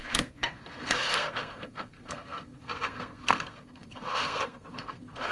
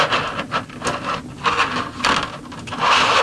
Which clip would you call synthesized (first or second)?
first